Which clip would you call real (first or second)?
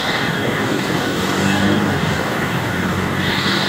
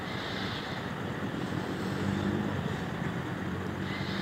second